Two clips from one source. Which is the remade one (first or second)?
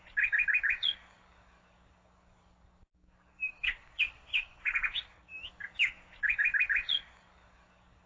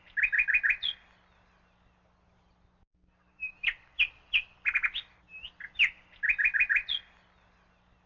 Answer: first